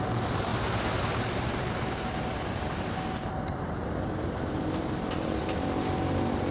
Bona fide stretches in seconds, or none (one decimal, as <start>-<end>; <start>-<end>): 0.5-1.3